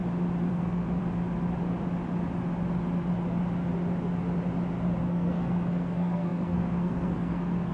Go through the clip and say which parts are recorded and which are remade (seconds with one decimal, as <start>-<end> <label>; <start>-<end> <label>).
0.0-0.5 recorded; 0.5-1.0 remade; 1.0-5.0 recorded; 5.0-7.7 remade